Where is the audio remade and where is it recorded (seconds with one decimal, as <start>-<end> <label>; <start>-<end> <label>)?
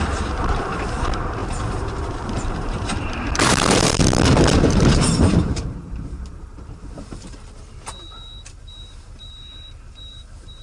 0.0-10.6 remade